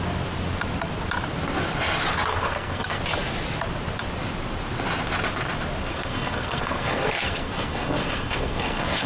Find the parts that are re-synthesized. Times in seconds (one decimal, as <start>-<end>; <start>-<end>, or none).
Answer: 2.3-3.0; 5.8-9.1